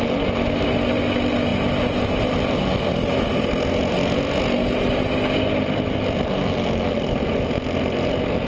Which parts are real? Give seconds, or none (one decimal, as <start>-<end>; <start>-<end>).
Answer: 0.0-8.5